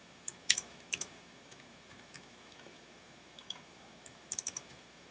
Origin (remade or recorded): remade